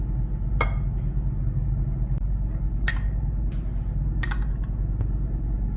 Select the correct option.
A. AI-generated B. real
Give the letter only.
B